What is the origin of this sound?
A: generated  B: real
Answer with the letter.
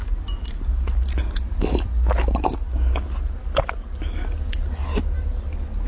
B